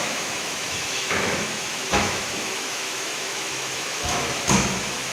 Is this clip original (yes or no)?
no